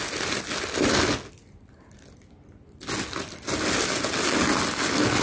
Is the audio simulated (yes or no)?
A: no